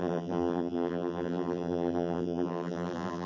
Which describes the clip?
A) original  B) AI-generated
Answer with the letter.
B